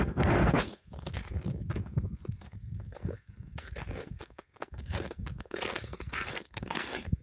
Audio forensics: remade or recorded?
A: remade